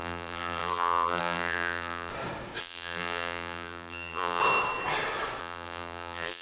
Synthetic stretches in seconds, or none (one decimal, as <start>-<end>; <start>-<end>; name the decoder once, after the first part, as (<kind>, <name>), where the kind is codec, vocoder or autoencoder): 0.0-2.1 (vocoder, BigVGAN v2); 2.6-4.4; 5.4-6.4